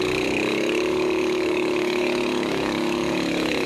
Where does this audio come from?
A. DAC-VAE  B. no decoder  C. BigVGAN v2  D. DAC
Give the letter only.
D